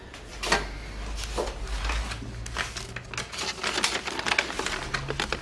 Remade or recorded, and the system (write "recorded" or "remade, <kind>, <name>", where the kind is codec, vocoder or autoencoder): recorded